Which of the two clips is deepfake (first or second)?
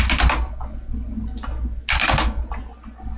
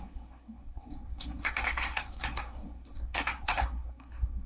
second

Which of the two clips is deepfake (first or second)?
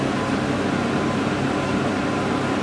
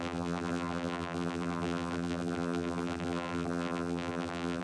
second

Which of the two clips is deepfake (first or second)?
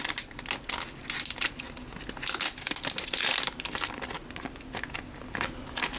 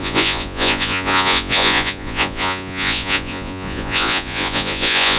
second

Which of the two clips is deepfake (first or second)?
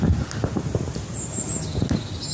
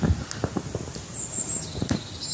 second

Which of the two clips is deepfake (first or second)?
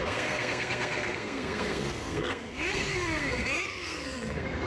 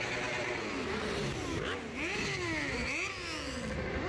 first